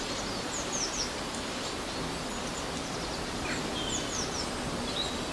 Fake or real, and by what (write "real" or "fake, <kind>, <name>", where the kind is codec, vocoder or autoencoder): real